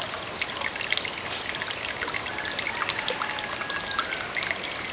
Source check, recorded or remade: recorded